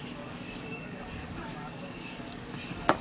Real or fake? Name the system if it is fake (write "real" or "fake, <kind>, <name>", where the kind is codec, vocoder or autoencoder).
fake, codec, DAC